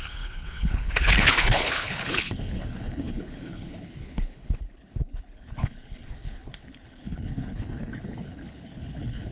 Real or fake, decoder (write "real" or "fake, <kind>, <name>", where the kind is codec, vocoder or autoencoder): fake, codec, HILCodec